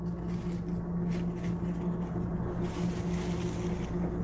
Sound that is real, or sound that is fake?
real